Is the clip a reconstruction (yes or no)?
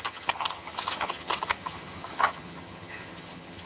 yes